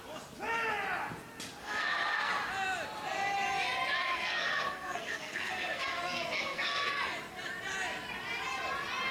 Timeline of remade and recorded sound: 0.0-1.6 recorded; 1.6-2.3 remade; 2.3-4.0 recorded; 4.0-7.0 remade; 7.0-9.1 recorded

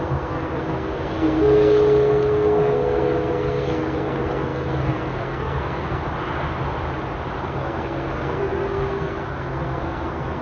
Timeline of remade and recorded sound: 0.0-6.0 remade; 6.0-7.4 recorded; 7.4-10.4 remade

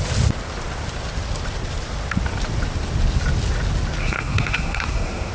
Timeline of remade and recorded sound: 0.0-4.0 recorded; 4.0-5.3 remade